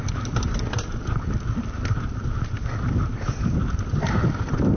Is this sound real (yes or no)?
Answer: yes